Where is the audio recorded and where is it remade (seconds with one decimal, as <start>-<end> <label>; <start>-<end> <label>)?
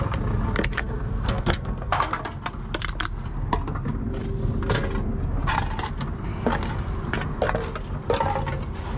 0.0-0.8 recorded; 0.8-2.2 remade; 2.2-9.0 recorded